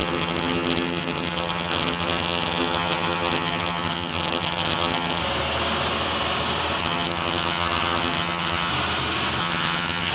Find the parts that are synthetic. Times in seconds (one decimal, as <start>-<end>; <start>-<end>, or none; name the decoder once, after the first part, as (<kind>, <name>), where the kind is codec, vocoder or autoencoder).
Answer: 0.0-5.2 (vocoder, HiFi-GAN); 6.8-8.7; 9.4-10.1